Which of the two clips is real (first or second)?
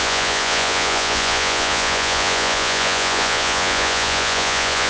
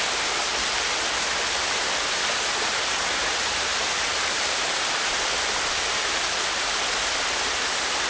second